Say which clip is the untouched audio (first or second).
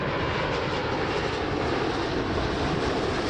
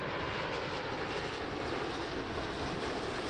first